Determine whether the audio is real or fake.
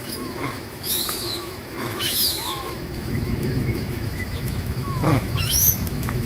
fake